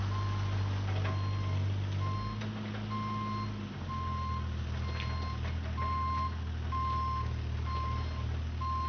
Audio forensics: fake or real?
real